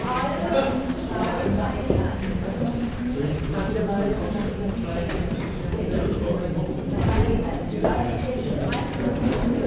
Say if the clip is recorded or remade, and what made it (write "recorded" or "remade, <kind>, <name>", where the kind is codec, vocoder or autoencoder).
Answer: remade, vocoder, BigVGAN v2